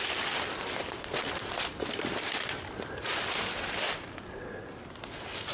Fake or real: real